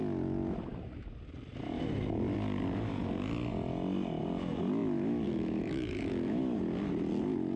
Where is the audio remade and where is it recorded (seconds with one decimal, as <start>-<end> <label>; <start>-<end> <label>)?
0.0-4.8 recorded; 4.8-6.4 remade; 6.4-7.6 recorded

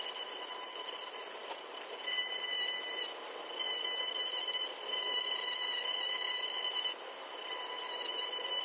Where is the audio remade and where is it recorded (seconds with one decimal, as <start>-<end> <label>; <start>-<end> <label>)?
0.0-8.6 recorded